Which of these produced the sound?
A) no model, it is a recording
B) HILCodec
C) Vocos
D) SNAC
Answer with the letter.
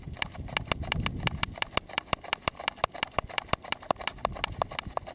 A